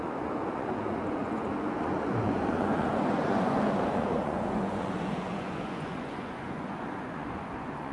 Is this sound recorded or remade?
remade